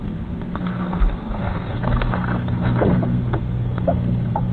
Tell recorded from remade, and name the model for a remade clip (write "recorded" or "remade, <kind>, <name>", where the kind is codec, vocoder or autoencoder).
remade, codec, SNAC